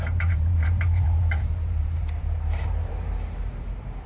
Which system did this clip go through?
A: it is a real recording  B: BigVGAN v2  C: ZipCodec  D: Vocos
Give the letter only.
B